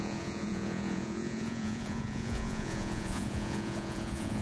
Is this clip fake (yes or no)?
yes